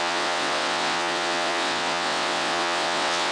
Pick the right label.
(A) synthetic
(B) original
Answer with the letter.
A